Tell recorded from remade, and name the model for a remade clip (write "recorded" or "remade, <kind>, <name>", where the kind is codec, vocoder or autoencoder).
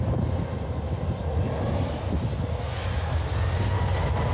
recorded